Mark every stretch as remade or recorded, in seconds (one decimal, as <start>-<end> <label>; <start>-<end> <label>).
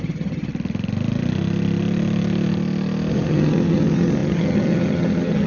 0.0-0.5 remade; 0.5-3.1 recorded; 3.1-5.5 remade